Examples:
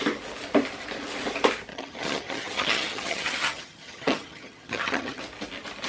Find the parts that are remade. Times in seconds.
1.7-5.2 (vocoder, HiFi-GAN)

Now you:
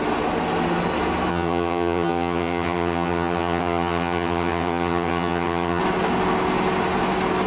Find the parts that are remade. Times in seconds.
1.3-5.8 (vocoder, HiFi-GAN)

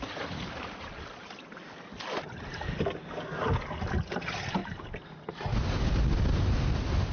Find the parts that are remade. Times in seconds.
none